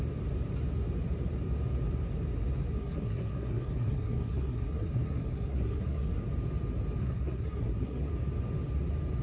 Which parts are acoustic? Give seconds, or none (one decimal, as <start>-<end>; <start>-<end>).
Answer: 0.0-2.7; 6.2-7.0; 8.1-9.2